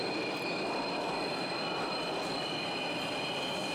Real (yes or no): yes